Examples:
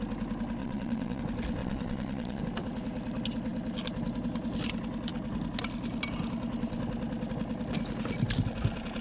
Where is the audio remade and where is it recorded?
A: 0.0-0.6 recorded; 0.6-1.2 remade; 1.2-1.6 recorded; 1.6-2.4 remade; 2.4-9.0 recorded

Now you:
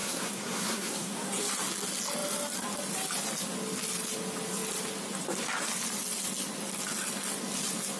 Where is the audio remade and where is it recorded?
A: 0.0-1.1 remade; 1.1-8.0 recorded